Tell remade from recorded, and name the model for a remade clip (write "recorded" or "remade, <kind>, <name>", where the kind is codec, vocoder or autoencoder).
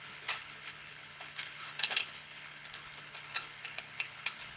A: remade, codec, HILCodec